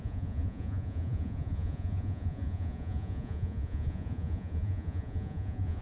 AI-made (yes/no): yes